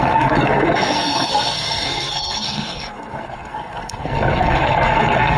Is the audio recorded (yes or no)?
no